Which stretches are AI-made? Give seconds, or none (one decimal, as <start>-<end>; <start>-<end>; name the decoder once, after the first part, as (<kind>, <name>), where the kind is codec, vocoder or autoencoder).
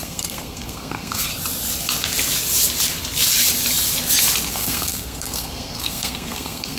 0.0-1.3 (codec, SNAC); 4.5-6.8